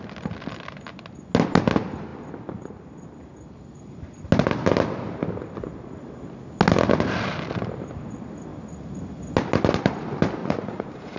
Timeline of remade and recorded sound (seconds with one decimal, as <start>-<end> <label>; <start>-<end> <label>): 0.0-10.4 recorded; 10.4-11.2 remade